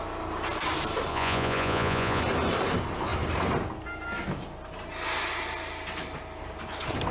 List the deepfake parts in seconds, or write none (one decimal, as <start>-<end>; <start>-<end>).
1.1-2.2